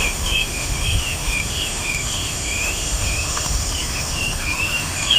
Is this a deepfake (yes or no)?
yes